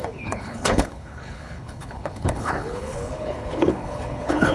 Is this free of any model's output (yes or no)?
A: no